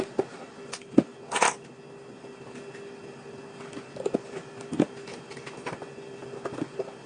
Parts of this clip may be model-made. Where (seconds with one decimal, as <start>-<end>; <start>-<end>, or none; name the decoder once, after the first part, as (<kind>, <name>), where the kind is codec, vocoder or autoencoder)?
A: none